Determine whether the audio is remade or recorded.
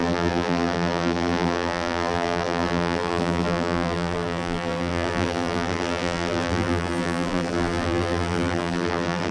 remade